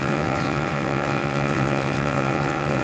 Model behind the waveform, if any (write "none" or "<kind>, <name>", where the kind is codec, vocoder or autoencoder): vocoder, WaveNeXt